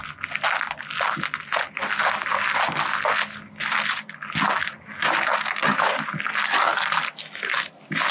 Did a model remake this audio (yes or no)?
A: no